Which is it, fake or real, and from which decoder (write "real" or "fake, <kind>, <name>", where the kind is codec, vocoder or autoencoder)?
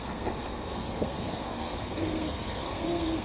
fake, codec, SNAC